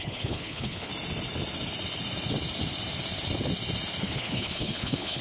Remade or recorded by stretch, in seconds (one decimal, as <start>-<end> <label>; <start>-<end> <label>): 0.0-0.9 remade; 0.9-4.0 recorded; 4.0-5.2 remade